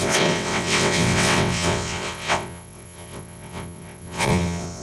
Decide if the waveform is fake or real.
fake